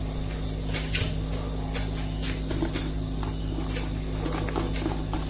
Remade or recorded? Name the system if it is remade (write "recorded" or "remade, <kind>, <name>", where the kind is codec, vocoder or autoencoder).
recorded